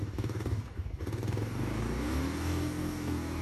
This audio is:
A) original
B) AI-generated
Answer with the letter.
B